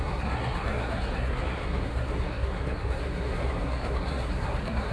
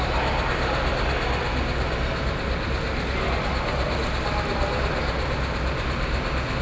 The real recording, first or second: second